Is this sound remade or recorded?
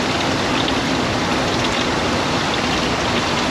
recorded